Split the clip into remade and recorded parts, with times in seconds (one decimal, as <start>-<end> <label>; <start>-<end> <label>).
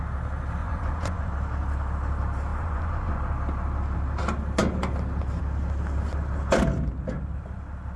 0.0-0.6 recorded; 0.6-1.3 remade; 1.3-2.5 recorded; 2.5-3.2 remade; 3.2-8.0 recorded